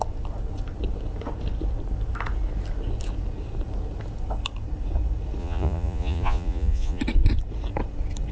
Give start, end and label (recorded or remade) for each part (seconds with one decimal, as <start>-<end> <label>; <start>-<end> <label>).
0.0-5.4 recorded; 5.4-7.0 remade; 7.0-8.3 recorded